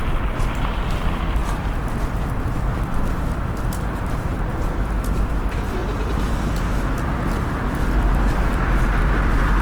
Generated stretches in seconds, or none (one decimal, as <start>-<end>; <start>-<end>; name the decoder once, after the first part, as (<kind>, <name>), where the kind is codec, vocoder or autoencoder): 0.0-1.4 (vocoder, BigVGAN v2); 3.3-5.8; 8.1-9.6